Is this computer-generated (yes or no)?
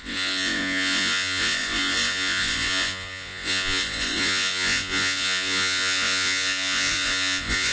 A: yes